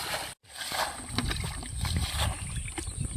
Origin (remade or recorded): recorded